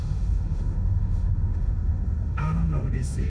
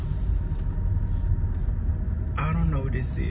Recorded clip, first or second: second